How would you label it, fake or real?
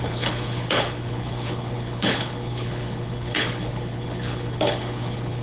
fake